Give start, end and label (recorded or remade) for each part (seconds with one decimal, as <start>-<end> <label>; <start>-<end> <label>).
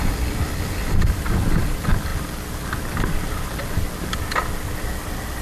0.0-5.4 recorded